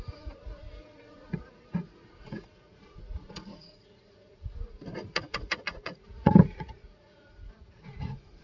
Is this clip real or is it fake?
fake